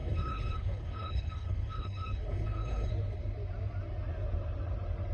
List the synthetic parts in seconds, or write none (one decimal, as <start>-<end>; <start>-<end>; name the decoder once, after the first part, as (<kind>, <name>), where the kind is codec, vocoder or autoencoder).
0.0-2.9 (codec, HILCodec)